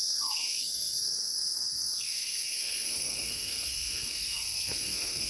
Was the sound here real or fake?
fake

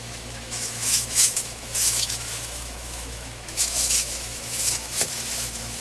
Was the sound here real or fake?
fake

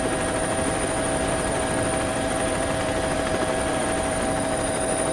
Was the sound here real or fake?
fake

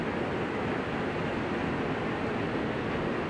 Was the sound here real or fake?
real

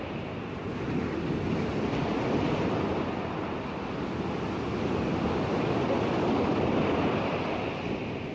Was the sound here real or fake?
real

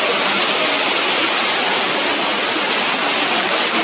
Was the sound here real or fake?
real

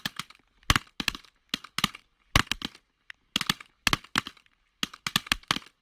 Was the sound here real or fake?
real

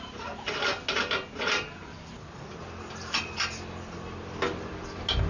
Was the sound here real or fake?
real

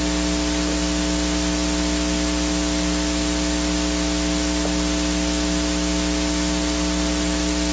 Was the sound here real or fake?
real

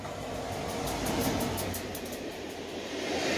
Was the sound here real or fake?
real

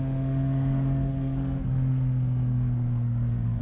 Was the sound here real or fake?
fake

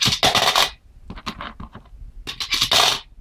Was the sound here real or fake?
real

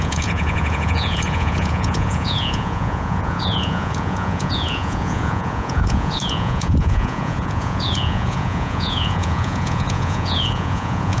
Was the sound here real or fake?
fake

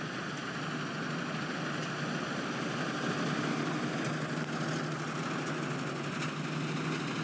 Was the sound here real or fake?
real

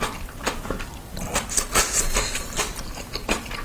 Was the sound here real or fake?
real